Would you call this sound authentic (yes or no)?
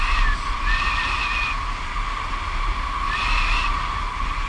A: yes